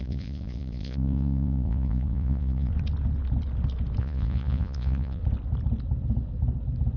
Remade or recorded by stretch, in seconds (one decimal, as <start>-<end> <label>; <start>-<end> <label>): 0.0-2.7 remade; 2.7-4.0 recorded; 4.0-5.2 remade; 5.2-7.0 recorded